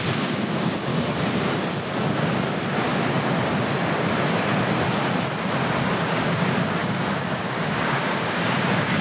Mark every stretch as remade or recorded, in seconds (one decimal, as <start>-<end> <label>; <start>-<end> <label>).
0.0-0.9 remade; 0.9-5.9 recorded; 5.9-9.0 remade